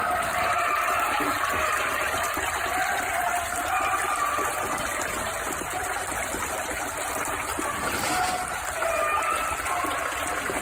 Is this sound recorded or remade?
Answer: recorded